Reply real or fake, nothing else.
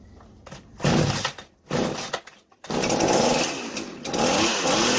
real